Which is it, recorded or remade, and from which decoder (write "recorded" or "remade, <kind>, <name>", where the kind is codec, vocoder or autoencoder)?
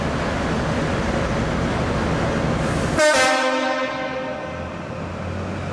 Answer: recorded